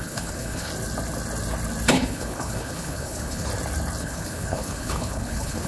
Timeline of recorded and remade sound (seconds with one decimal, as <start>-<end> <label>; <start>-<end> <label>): 0.0-0.7 remade; 0.7-1.9 recorded; 1.9-3.5 remade; 3.5-4.0 recorded; 4.0-5.7 remade